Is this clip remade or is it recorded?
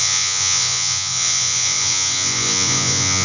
remade